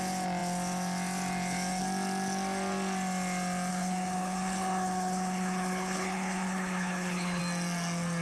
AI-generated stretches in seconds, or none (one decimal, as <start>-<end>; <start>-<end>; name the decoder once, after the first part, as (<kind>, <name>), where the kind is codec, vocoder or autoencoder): 3.7-7.4 (codec, HILCodec)